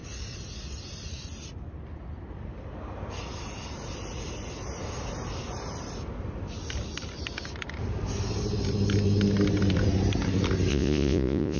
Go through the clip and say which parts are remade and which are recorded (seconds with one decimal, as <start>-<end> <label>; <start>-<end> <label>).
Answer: 0.0-10.7 recorded; 10.7-11.6 remade